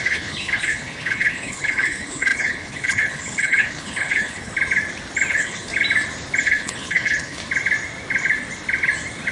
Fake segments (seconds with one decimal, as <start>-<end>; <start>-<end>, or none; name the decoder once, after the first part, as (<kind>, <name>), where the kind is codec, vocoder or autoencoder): 0.0-4.5 (codec, HILCodec); 5.3-5.7; 6.4-7.4